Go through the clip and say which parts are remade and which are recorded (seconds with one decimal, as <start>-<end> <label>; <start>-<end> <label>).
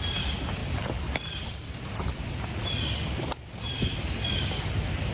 0.0-5.1 recorded